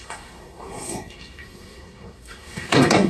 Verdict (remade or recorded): remade